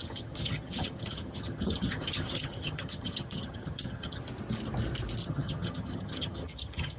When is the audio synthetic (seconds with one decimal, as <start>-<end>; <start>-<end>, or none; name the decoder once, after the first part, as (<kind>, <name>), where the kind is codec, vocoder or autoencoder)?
0.0-4.2 (vocoder, HiFi-GAN); 5.2-7.0